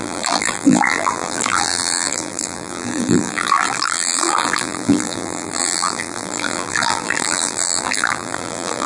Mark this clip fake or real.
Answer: fake